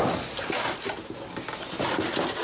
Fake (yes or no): no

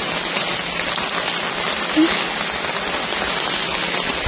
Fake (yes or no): no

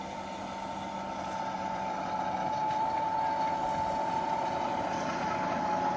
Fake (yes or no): no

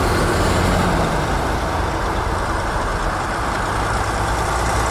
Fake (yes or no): no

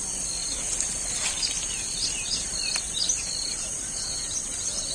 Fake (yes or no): no